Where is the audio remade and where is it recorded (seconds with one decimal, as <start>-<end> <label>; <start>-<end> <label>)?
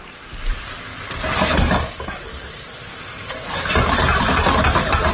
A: 0.0-5.1 recorded